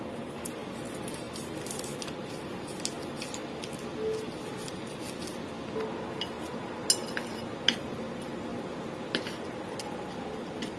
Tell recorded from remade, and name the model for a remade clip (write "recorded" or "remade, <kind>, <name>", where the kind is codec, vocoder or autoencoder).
recorded